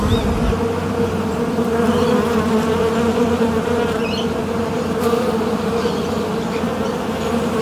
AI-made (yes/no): yes